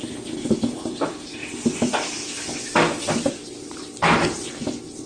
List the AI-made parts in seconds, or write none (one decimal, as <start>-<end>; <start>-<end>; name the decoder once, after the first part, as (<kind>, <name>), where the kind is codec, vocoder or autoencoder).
none